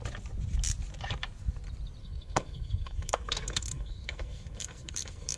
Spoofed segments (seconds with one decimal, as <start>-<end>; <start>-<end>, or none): 2.0-5.4